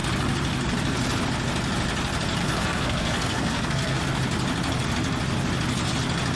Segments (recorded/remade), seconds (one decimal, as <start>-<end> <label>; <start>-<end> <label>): 0.0-2.4 recorded; 2.4-4.0 remade; 4.0-6.4 recorded